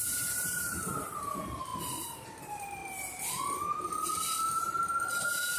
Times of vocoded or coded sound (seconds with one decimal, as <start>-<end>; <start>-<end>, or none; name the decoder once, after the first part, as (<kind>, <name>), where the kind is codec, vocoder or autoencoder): 0.0-2.8 (vocoder, BigVGAN v2); 5.1-5.6